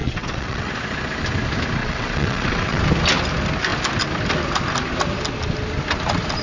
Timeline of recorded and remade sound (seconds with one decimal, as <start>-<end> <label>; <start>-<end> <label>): 0.0-0.7 remade; 0.7-1.8 recorded; 1.8-2.8 remade; 2.8-6.4 recorded